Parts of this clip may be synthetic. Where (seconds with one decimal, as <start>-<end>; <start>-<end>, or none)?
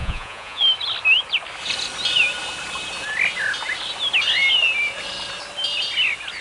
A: 0.0-0.6